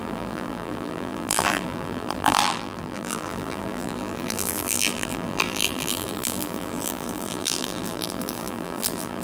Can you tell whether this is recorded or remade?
remade